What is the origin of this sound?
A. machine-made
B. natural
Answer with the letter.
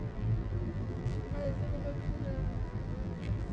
A